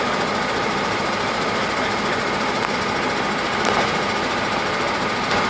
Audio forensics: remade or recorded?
recorded